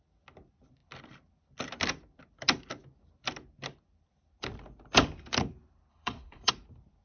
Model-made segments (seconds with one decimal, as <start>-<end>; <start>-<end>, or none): 5.9-6.5